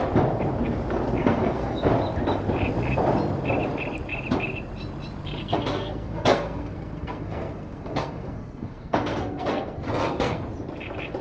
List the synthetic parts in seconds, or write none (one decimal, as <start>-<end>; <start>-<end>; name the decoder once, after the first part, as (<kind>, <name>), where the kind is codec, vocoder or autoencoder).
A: 1.2-1.9 (codec, SNAC); 5.4-10.4